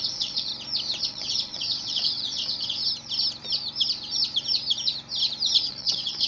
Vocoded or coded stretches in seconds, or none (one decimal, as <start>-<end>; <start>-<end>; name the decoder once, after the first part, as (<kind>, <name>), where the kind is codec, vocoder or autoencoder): 0.0-0.5 (vocoder, WaveNeXt); 1.0-2.8; 5.6-6.3